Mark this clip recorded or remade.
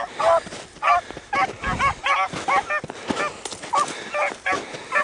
recorded